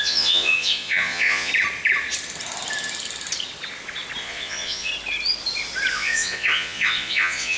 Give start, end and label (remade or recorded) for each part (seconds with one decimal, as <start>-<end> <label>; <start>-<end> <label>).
0.0-1.5 remade; 1.5-4.2 recorded; 4.2-4.9 remade; 4.9-5.9 recorded; 5.9-7.6 remade